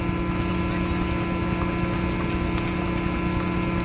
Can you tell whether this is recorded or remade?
recorded